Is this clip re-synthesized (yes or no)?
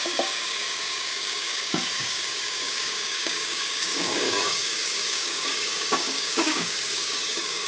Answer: yes